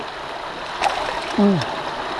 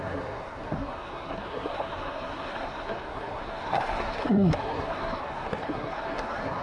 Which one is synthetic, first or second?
second